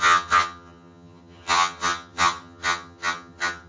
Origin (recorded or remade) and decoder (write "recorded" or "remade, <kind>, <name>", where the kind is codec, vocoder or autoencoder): remade, vocoder, HiFi-GAN